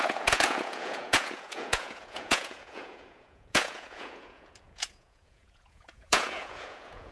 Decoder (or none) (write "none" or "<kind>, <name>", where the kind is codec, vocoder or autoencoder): vocoder, Vocos